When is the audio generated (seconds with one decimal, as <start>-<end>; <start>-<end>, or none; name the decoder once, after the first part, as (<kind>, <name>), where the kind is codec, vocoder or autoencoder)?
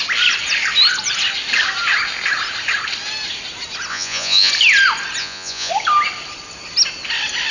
3.9-4.5 (vocoder, Vocos); 5.2-5.7